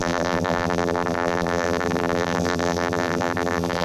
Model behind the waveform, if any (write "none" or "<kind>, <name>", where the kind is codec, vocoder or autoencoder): vocoder, BigVGAN v2